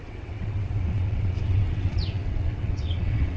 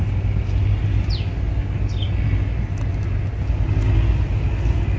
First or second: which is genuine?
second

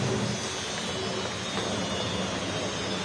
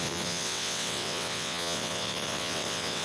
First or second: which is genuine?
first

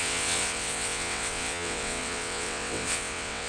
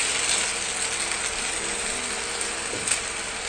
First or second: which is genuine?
second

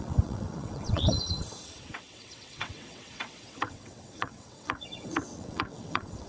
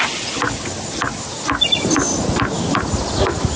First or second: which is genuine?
second